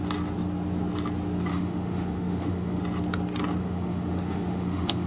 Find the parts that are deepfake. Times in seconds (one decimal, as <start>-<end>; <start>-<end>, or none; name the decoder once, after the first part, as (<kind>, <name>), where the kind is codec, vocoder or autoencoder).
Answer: 1.5-2.8 (autoencoder, DAC-VAE); 3.6-5.1